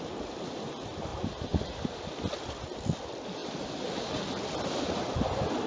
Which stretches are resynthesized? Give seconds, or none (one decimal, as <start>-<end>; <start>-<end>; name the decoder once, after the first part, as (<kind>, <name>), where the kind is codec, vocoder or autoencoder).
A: none